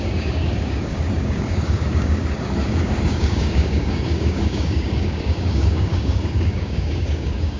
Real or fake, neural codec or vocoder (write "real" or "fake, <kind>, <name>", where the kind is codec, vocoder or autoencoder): fake, codec, DAC